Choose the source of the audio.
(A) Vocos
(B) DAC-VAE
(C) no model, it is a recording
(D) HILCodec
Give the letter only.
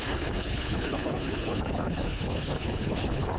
D